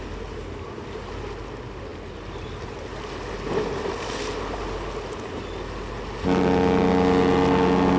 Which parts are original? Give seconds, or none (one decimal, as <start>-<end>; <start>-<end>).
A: 0.0-8.0